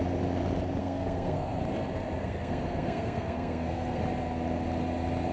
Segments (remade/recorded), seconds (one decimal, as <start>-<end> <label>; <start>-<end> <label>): 0.0-0.8 recorded; 0.8-1.6 remade; 1.6-2.2 recorded; 2.2-4.0 remade; 4.0-5.3 recorded

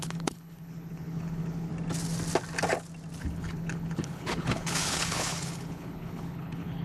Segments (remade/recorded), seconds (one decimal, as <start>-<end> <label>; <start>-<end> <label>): 0.0-1.7 remade; 1.7-3.2 recorded; 3.2-6.8 remade

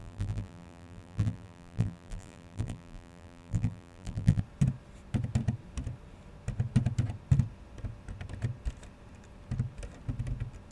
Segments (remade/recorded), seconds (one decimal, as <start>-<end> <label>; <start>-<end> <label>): 0.0-4.4 remade; 4.4-10.7 recorded

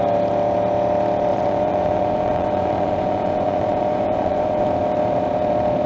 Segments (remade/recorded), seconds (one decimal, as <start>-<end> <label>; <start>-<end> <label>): 0.0-1.3 recorded; 1.3-4.7 remade; 4.7-5.9 recorded

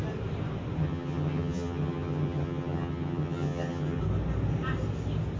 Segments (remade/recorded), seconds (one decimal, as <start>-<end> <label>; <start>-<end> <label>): 0.0-0.8 recorded; 0.8-4.0 remade; 4.0-5.4 recorded

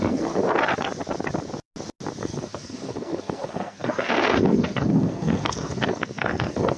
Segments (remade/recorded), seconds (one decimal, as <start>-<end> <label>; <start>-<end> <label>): 0.0-0.4 remade; 0.4-2.2 recorded; 2.2-6.8 remade

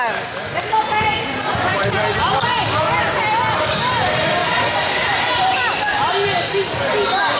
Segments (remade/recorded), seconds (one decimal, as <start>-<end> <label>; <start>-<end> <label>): 0.0-1.1 recorded; 1.1-1.8 remade; 1.8-4.4 recorded; 4.4-6.1 remade; 6.1-7.4 recorded